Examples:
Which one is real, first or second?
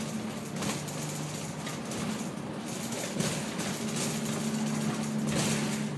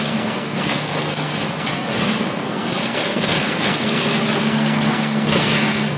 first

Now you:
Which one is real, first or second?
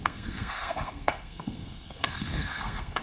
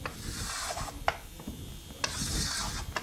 second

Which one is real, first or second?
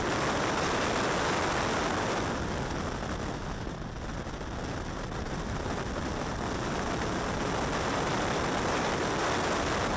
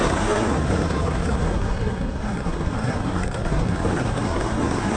first